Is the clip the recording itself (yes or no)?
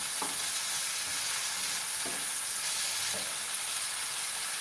yes